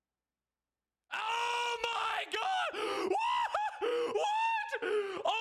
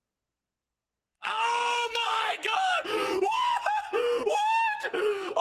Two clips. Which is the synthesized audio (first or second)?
second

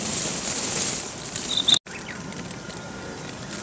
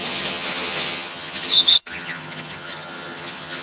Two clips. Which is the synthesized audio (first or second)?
second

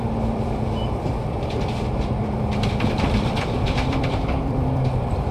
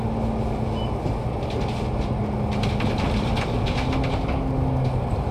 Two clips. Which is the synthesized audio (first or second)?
first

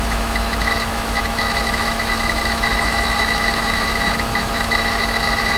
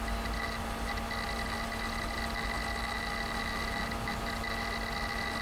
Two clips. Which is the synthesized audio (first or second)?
first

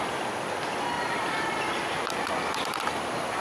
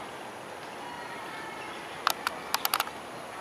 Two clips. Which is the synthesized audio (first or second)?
first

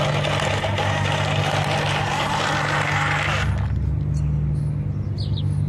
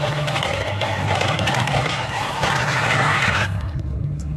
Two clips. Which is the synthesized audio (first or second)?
second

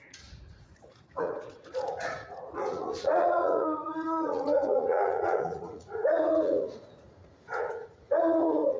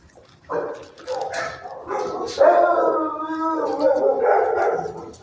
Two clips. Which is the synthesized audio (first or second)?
first